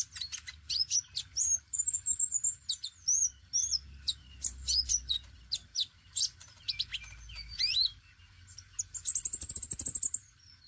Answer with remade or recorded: recorded